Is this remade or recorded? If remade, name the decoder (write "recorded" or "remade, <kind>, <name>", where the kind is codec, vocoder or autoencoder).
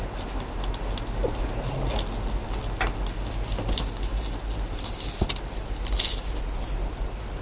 recorded